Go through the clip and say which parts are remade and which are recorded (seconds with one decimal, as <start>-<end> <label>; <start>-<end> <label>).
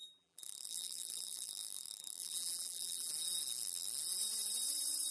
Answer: 0.0-3.1 remade; 3.1-5.1 recorded